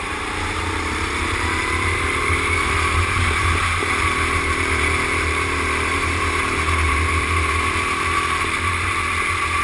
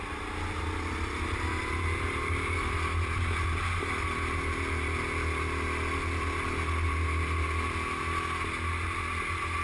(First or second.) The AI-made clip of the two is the first